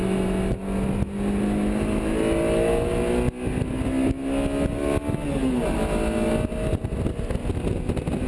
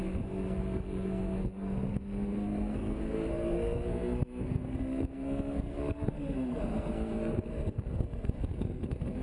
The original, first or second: first